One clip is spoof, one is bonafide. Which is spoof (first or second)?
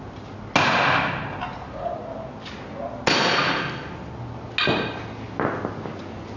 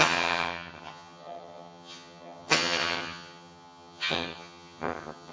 second